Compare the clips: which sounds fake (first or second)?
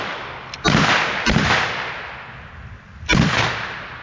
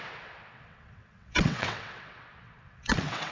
second